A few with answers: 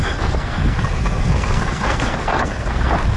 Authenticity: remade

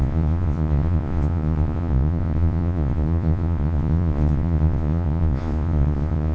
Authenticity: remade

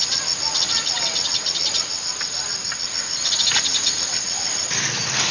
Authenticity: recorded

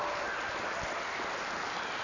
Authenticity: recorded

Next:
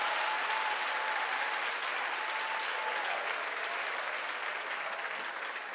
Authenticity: recorded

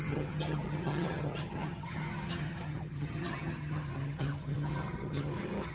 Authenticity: remade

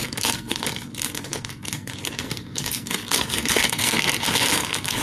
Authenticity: remade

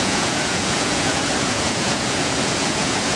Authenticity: remade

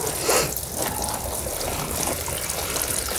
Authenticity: recorded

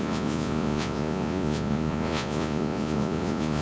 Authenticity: remade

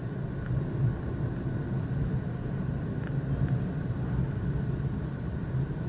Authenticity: recorded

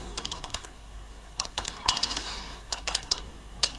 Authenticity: remade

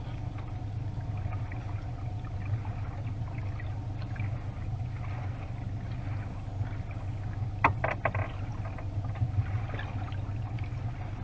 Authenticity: recorded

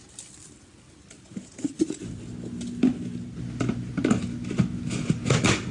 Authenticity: recorded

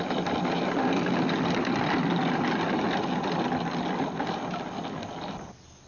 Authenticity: recorded